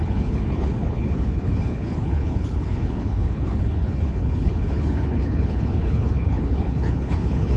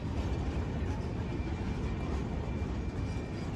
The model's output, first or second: first